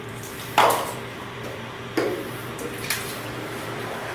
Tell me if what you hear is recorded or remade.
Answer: remade